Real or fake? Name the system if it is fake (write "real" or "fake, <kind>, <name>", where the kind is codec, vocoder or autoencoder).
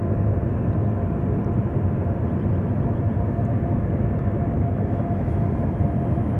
real